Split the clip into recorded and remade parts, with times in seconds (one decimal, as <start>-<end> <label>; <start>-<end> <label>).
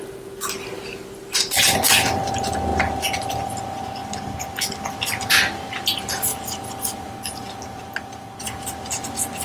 0.0-9.4 recorded